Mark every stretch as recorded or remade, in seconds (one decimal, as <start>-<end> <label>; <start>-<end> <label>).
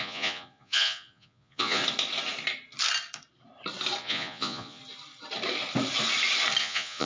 0.0-1.8 remade; 1.8-4.0 recorded; 4.0-4.8 remade; 4.8-6.6 recorded; 6.6-7.1 remade